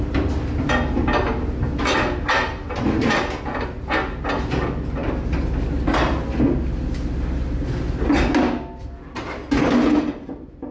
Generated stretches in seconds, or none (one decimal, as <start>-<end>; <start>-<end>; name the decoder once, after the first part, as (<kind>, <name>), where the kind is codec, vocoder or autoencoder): none